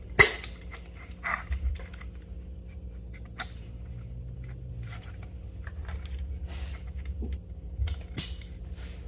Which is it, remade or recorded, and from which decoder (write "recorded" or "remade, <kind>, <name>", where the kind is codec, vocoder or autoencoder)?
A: recorded